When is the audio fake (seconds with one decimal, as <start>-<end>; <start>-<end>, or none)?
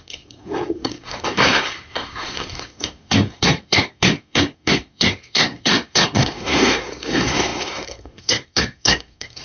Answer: 0.0-9.4